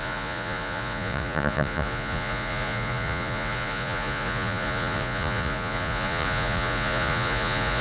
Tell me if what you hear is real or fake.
fake